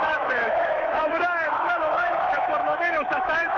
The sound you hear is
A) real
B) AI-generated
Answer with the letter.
B